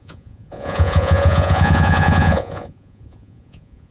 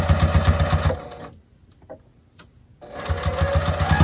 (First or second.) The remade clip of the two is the first